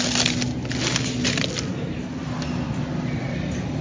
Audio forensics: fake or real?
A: real